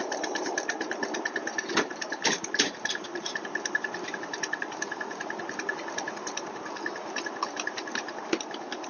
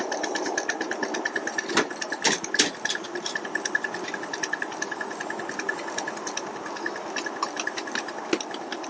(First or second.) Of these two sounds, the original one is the second